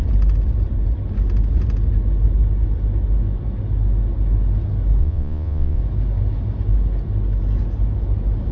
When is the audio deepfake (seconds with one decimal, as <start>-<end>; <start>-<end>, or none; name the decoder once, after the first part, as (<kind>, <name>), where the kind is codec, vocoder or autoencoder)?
5.0-5.8 (vocoder, Vocos)